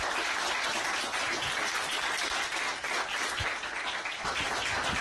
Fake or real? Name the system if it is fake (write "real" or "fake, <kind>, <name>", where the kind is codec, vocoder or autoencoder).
fake, vocoder, BigVGAN v2